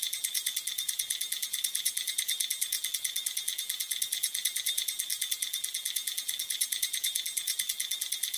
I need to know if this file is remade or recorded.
remade